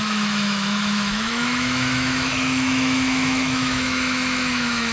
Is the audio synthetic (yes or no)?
yes